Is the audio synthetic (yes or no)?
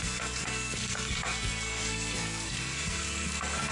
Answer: yes